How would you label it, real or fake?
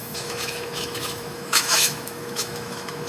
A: fake